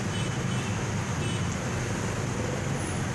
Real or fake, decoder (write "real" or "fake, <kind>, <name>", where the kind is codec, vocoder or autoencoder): real